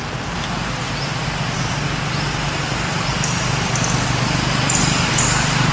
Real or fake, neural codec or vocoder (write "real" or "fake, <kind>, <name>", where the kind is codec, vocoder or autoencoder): real